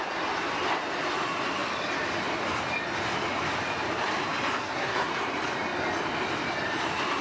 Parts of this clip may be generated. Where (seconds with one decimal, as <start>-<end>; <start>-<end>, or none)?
4.6-5.1